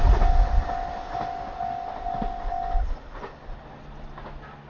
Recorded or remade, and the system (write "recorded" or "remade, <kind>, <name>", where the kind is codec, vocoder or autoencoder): recorded